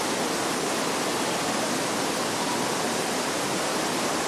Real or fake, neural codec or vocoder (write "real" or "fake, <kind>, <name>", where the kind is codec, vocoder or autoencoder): real